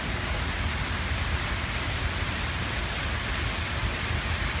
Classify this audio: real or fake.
real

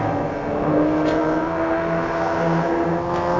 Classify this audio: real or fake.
fake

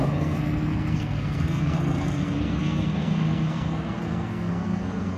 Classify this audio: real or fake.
fake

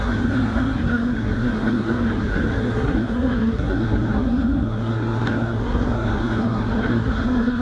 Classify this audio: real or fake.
fake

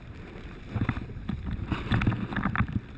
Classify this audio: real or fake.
real